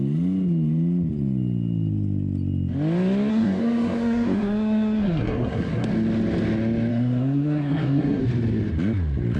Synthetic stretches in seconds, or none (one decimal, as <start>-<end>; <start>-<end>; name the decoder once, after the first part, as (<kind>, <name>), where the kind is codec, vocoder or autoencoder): 3.3-5.9 (codec, SNAC); 6.9-8.2

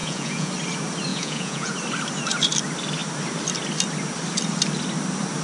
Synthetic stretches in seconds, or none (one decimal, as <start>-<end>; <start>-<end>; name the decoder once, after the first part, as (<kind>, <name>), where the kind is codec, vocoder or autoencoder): 0.0-0.5 (vocoder, Vocos); 1.1-1.7

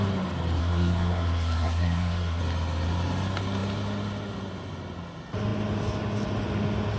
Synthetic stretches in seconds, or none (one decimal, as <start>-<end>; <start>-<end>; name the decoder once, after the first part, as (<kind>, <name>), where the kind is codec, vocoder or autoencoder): 0.6-2.4 (codec, SNAC)